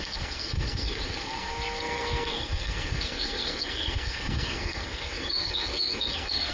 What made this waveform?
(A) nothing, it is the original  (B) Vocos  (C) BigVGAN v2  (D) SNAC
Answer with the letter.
D